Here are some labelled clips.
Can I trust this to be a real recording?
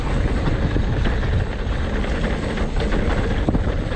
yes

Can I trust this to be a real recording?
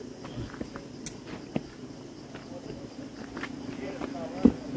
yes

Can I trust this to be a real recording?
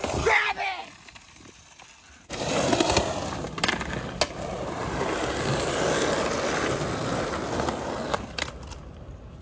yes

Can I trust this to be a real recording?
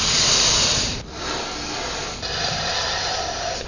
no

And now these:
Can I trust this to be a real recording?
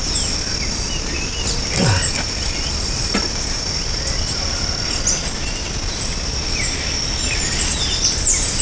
yes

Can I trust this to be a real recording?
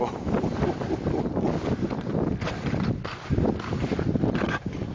yes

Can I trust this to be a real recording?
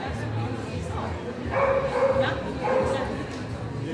yes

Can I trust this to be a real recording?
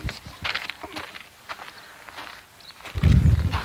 yes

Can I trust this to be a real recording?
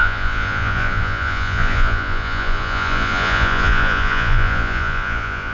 no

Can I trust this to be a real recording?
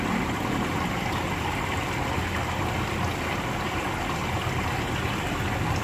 yes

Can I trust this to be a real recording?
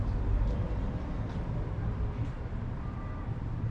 no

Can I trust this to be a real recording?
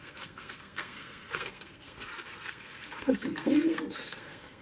no